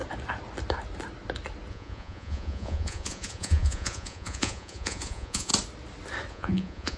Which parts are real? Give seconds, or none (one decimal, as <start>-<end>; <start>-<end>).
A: 0.0-1.7; 5.5-6.3